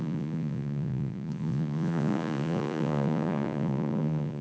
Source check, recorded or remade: remade